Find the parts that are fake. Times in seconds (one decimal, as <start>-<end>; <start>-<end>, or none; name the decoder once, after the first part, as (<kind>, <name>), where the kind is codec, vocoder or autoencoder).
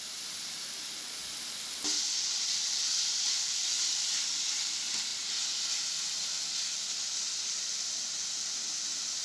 none